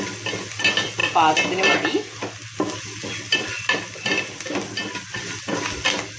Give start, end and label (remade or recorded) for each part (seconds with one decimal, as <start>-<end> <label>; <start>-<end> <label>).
0.0-6.2 recorded